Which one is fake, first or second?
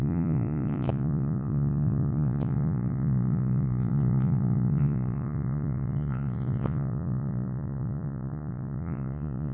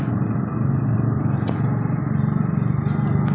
first